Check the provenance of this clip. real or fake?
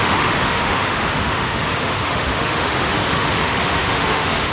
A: fake